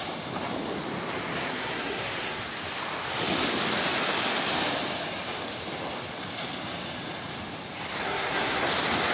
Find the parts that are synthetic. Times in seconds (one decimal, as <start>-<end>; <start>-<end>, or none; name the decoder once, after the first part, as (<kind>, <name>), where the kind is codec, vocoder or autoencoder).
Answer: 1.5-2.4 (codec, SNAC); 8.0-8.6